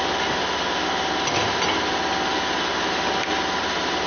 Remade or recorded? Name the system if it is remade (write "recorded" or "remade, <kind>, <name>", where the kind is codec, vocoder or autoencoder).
recorded